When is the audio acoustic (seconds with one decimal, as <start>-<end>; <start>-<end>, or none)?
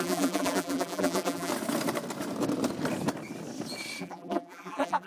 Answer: 1.5-4.0